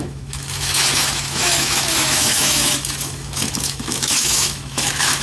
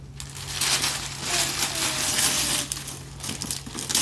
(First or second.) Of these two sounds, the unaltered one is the second